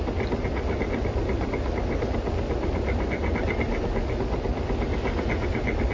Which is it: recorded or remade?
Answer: recorded